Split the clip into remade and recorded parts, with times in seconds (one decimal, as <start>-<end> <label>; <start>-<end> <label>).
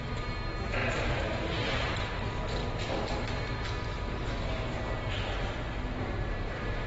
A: 0.0-0.8 recorded; 0.8-1.9 remade; 1.9-6.9 recorded